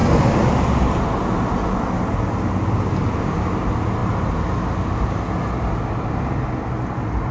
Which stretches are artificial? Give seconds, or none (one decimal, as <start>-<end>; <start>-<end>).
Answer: none